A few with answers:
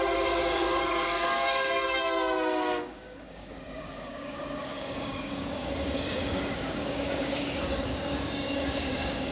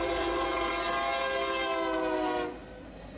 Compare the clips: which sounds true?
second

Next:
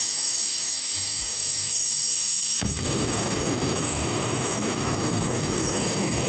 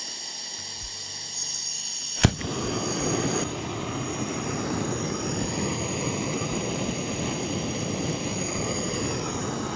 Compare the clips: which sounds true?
second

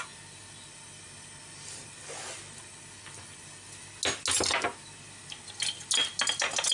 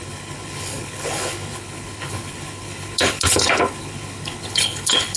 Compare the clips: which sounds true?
first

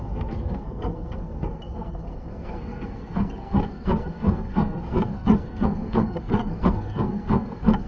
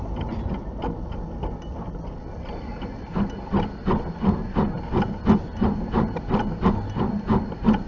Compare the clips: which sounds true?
second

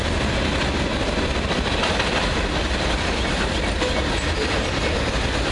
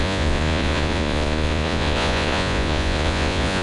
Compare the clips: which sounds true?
first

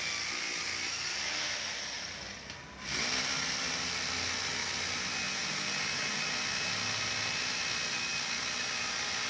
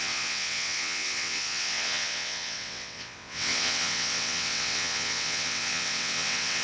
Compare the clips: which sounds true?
first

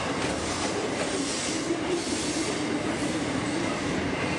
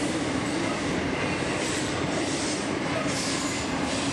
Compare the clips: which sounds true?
second